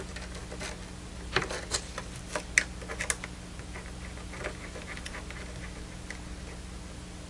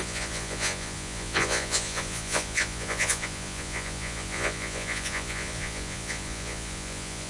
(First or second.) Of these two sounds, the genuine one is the first